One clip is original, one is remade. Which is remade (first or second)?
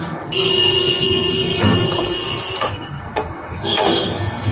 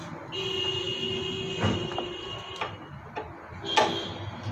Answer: first